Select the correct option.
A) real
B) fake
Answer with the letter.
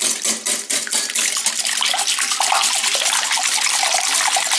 A